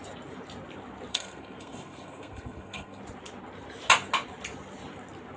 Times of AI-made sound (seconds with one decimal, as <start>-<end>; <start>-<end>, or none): 1.1-3.0